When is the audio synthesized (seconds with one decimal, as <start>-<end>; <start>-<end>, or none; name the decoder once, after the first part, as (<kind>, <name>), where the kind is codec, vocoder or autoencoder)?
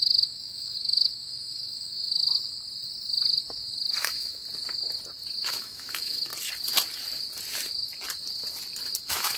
0.0-2.2 (autoencoder, DAC-VAE); 4.0-4.4; 5.5-6.3; 9.0-9.4